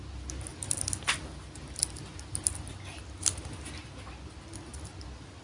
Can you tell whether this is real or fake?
real